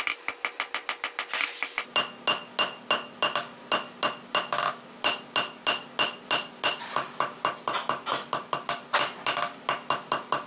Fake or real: real